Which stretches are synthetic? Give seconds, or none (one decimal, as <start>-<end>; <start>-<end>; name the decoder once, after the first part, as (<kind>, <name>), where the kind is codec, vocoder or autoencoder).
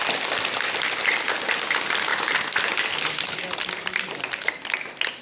none